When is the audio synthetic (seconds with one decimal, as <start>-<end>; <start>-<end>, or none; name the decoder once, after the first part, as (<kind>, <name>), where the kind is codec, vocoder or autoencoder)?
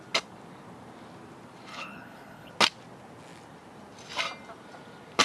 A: 1.7-2.5 (codec, HILCodec)